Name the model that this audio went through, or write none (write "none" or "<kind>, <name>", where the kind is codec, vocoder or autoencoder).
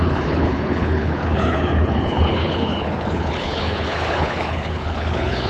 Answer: codec, HILCodec